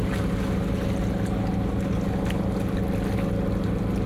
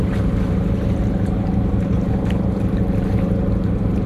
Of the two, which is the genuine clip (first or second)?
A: first